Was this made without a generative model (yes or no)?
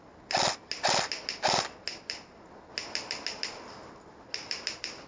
yes